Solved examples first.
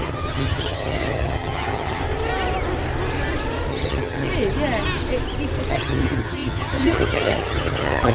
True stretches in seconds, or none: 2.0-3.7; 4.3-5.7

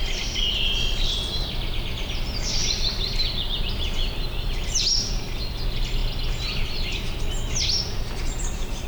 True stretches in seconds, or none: 0.0-8.9

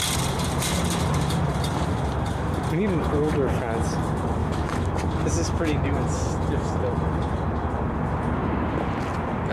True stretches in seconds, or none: 0.0-4.4; 4.9-9.5

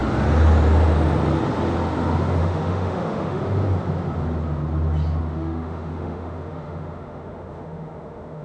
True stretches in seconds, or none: 0.0-2.4; 3.4-5.2

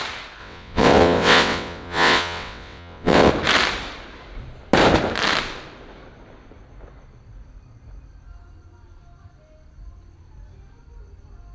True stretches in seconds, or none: 0.0-0.4; 3.3-11.5

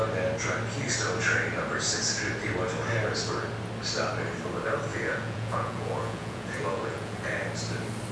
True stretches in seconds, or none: 0.0-4.9; 7.2-8.1

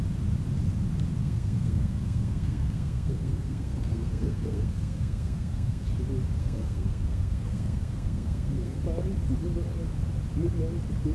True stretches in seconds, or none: 0.0-1.2; 5.9-6.4; 8.8-11.1